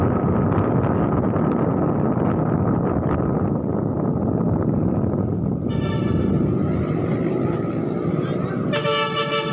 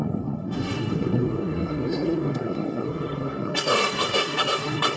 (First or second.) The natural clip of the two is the first